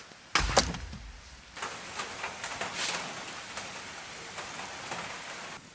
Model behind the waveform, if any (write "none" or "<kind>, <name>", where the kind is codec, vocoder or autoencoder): none